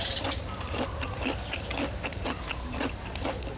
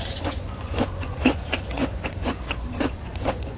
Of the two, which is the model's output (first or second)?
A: second